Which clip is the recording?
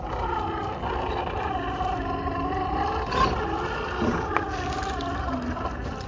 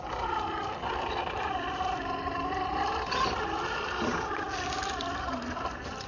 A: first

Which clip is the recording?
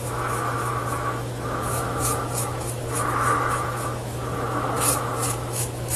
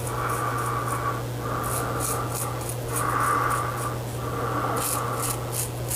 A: second